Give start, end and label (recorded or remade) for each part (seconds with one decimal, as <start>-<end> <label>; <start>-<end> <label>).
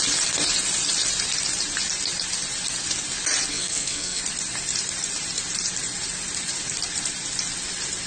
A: 0.0-3.5 recorded; 3.5-4.2 remade; 4.2-8.1 recorded